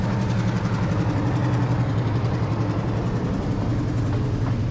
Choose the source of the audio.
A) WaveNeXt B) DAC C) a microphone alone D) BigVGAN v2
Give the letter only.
D